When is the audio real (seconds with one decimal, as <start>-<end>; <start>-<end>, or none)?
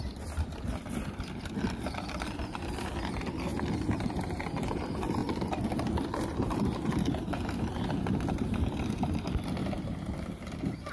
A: 0.0-10.9